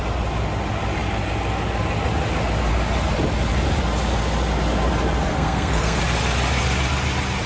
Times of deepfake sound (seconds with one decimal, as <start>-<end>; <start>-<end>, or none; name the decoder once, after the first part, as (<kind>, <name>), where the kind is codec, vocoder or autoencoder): 5.3-6.0 (codec, SNAC)